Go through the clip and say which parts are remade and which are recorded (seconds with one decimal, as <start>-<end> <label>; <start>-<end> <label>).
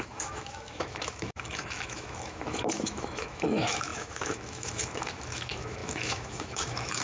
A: 0.0-7.0 remade